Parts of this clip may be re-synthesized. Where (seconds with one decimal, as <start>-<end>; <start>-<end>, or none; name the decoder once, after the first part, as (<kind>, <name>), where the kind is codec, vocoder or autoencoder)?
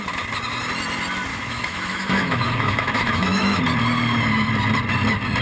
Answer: 1.3-3.6 (autoencoder, DAC-VAE)